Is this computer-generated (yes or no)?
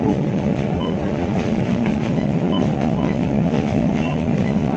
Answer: yes